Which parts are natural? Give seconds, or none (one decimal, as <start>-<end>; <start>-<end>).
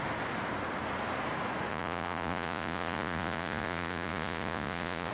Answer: 0.0-1.7